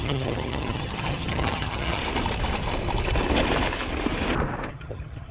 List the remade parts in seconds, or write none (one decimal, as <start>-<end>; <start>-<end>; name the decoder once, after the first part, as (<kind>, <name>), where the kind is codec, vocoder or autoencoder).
0.0-2.0 (vocoder, HiFi-GAN); 4.7-5.3